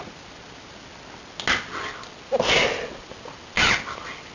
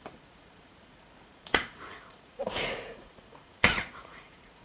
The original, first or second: first